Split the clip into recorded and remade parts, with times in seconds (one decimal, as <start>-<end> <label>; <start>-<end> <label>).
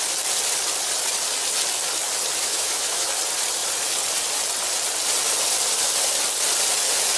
0.0-2.5 recorded; 2.5-3.1 remade; 3.1-7.2 recorded